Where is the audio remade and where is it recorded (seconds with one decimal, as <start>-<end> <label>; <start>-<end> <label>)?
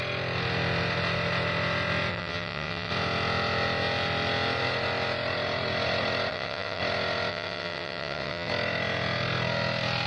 0.0-2.1 recorded; 2.1-2.9 remade; 2.9-6.3 recorded; 6.3-6.8 remade; 6.8-7.3 recorded; 7.3-8.5 remade; 8.5-10.1 recorded